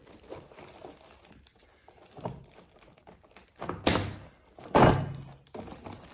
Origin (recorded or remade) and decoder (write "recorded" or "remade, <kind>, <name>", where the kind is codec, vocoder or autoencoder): recorded